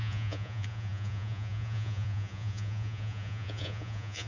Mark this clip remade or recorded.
remade